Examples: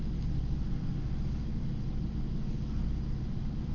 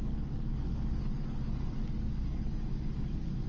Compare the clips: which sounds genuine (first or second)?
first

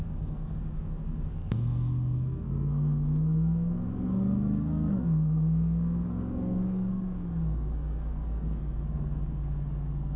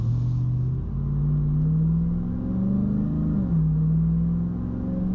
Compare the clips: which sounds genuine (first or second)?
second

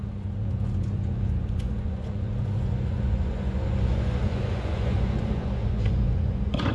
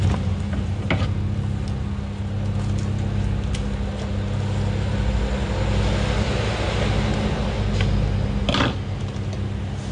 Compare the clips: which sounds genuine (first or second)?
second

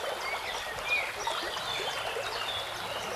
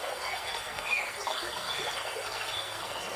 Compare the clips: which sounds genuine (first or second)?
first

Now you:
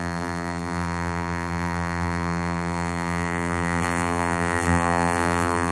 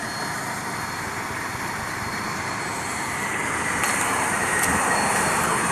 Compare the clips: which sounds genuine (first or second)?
second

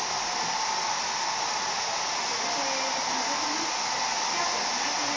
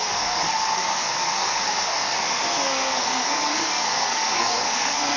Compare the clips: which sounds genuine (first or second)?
first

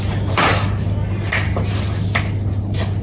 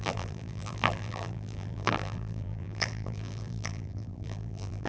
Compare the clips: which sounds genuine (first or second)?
first